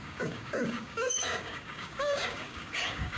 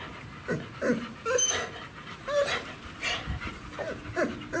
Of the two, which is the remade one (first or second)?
first